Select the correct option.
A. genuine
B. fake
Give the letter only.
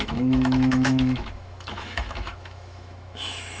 B